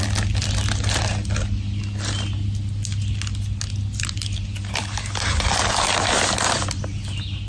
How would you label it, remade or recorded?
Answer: recorded